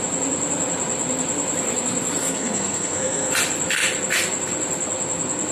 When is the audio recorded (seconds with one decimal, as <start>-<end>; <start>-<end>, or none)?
0.0-2.2; 3.3-5.5